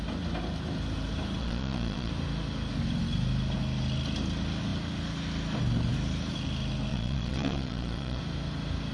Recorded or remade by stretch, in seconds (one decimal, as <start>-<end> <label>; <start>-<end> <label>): 0.0-1.4 recorded; 1.4-2.1 remade; 2.1-6.9 recorded; 6.9-8.2 remade; 8.2-8.9 recorded

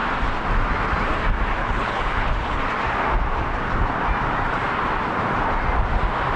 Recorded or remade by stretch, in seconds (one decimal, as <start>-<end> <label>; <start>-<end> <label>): 0.0-1.6 recorded; 1.6-2.6 remade; 2.6-6.4 recorded

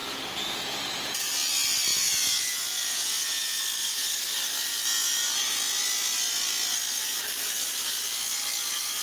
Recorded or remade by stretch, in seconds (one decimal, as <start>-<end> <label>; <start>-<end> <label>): 0.0-1.3 remade; 1.3-1.9 recorded; 1.9-3.6 remade; 3.6-9.0 recorded